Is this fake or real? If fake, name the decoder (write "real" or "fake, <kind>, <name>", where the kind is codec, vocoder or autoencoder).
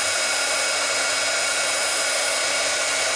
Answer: real